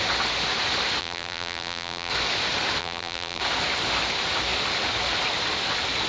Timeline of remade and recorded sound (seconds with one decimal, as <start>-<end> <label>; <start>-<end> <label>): 0.0-1.0 recorded; 1.0-2.1 remade; 2.1-2.8 recorded; 2.8-3.4 remade; 3.4-6.1 recorded